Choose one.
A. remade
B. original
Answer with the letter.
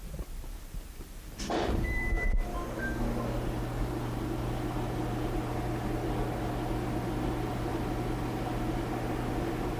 A